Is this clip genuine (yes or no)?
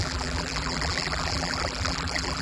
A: no